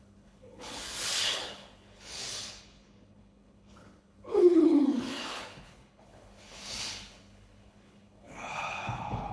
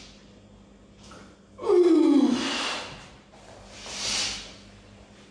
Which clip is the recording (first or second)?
second